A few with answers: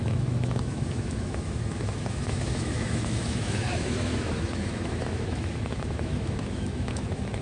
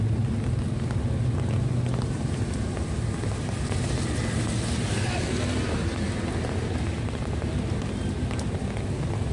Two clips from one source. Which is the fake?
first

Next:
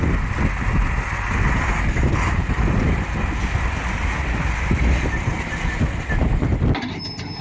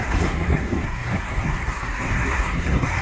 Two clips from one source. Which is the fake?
second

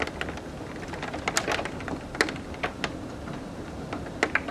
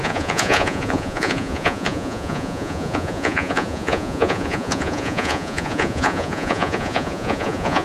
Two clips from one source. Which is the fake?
second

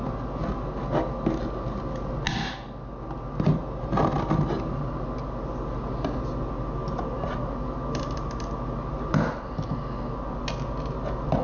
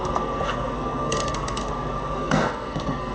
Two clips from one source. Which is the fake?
second